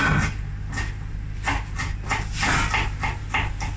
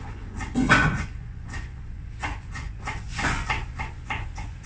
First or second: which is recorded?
first